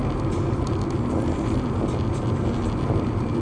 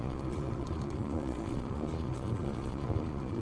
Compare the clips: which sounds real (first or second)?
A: first